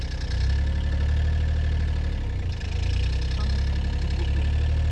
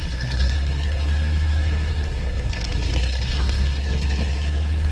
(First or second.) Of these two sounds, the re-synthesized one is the second